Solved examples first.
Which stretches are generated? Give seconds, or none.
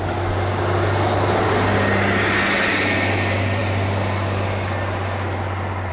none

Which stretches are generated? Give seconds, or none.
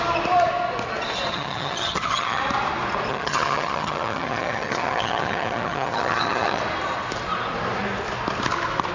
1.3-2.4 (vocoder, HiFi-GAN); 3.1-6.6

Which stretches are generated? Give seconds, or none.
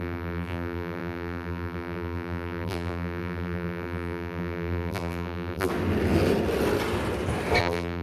0.0-5.7 (vocoder, BigVGAN v2); 7.6-8.0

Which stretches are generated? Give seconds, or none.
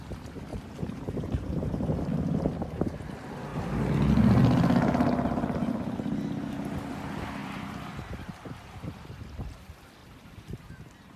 0.5-2.0 (vocoder, BigVGAN v2); 7.4-8.9; 10.0-10.7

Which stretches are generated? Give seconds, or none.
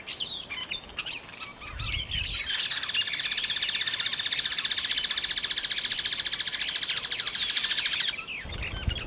none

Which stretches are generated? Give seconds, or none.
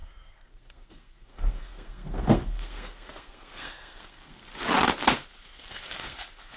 0.0-4.5 (codec, SNAC); 5.0-6.6